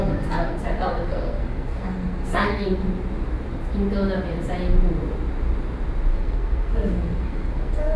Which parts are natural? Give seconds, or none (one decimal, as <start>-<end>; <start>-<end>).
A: 2.8-6.1